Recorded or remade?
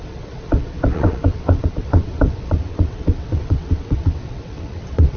remade